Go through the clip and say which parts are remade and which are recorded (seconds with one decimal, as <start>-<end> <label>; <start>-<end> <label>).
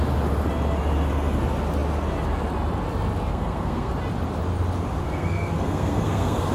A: 0.0-3.3 recorded; 3.3-3.9 remade; 3.9-5.0 recorded; 5.0-6.5 remade